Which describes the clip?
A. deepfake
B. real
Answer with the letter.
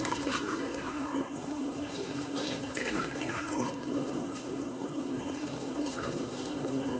A